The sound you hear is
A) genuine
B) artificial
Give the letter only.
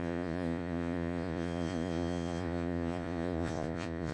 B